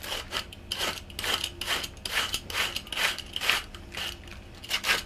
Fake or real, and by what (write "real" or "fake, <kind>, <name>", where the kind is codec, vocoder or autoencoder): real